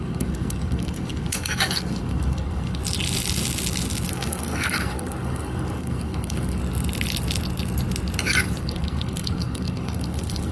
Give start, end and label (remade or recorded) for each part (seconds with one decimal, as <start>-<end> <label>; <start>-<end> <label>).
0.0-2.8 remade; 2.8-4.1 recorded; 4.1-6.6 remade; 6.6-8.6 recorded; 8.6-10.5 remade